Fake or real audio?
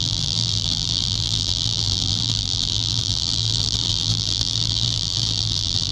fake